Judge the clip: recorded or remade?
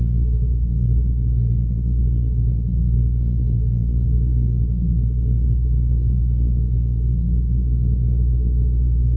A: remade